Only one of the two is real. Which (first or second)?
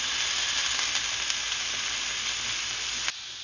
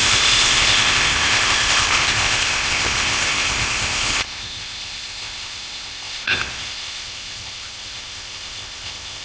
first